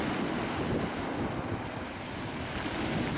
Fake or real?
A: real